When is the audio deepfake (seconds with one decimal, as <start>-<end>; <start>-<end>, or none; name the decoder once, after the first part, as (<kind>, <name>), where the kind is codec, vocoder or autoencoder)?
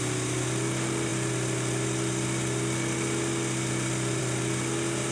none